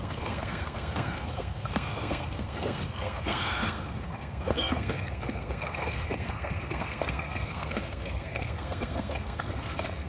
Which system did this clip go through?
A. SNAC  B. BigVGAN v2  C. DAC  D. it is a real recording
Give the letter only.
A